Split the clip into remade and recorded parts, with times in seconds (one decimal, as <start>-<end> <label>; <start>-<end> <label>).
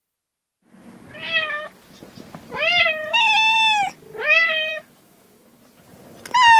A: 0.0-4.7 recorded; 4.7-5.6 remade; 5.6-6.6 recorded